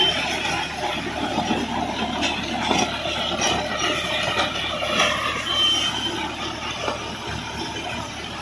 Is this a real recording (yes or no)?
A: yes